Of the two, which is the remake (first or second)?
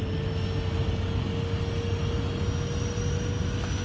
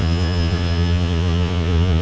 second